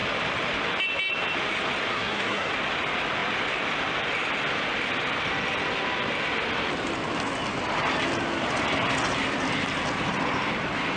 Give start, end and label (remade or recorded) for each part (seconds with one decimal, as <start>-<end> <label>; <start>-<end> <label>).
0.0-1.9 recorded; 1.9-2.5 remade; 2.5-11.0 recorded